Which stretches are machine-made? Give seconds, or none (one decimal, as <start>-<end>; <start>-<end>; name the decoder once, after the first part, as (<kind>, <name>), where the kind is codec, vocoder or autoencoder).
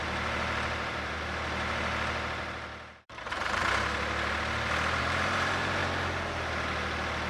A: 0.0-3.6 (vocoder, BigVGAN v2); 5.0-5.8